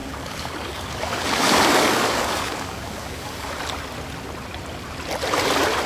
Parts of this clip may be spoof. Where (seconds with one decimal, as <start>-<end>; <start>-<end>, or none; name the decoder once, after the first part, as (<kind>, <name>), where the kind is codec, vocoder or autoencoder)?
0.0-3.5 (codec, DAC)